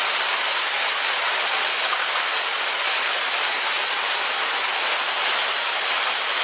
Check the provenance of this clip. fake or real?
real